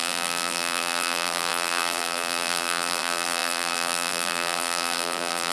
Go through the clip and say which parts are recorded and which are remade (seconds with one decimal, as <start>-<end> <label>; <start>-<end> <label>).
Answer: 0.0-5.5 remade